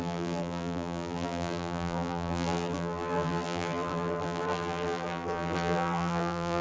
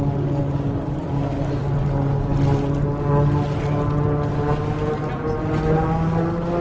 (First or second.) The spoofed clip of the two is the first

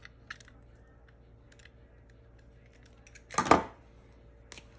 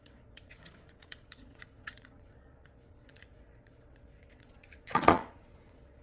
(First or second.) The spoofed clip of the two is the second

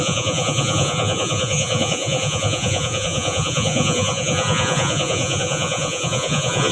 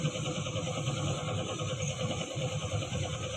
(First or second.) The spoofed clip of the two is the first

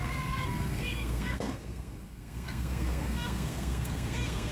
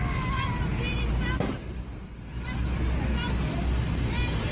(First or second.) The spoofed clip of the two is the first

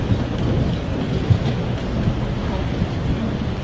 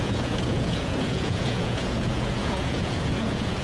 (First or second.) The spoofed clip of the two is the second